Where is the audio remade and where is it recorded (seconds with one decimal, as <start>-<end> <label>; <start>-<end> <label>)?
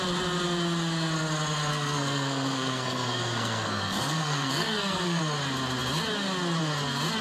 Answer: 0.0-1.7 recorded; 1.7-5.2 remade; 5.2-7.2 recorded